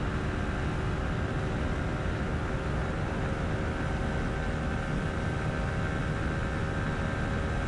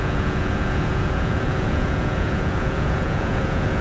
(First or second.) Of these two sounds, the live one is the first